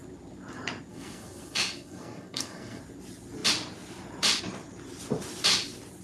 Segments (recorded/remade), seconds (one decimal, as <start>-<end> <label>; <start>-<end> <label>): 0.0-0.9 recorded; 0.9-2.8 remade; 2.8-6.0 recorded

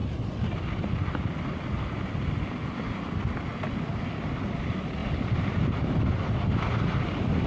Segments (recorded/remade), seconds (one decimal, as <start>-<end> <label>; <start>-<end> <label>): 0.0-5.0 recorded; 5.0-5.7 remade; 5.7-7.5 recorded

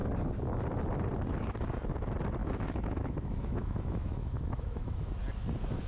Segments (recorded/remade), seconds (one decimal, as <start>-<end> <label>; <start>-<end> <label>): 0.0-2.4 recorded; 2.4-5.1 remade; 5.1-5.9 recorded

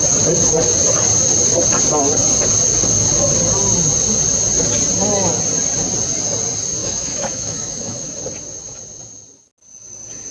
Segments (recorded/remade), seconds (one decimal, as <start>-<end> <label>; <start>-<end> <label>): 0.0-6.8 recorded; 6.8-8.2 remade; 8.2-10.3 recorded

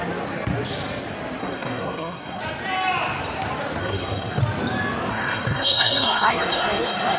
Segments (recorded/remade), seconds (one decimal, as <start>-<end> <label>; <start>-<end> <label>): 0.0-1.4 recorded; 1.4-2.4 remade; 2.4-3.8 recorded; 3.8-4.4 remade; 4.4-5.1 recorded; 5.1-7.2 remade

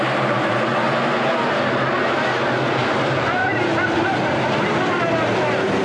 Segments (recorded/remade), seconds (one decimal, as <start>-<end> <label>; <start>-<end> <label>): 0.0-0.7 remade; 0.7-2.8 recorded; 2.8-3.4 remade; 3.4-5.8 recorded

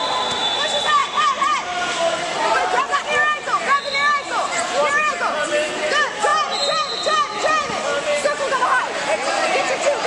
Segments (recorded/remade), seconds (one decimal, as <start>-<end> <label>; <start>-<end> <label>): 0.0-1.0 recorded; 1.0-5.2 remade; 5.2-7.9 recorded; 7.9-8.8 remade; 8.8-10.1 recorded